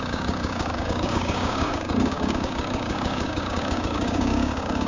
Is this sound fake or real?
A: fake